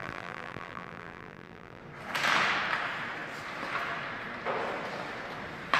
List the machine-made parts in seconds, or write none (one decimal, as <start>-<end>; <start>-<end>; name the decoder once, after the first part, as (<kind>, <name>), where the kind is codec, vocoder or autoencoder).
0.0-1.8 (vocoder, BigVGAN v2)